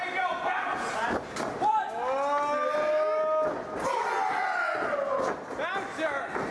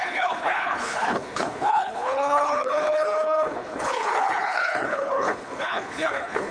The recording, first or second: first